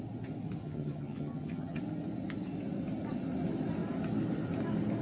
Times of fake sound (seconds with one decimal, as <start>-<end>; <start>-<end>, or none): 0.6-1.8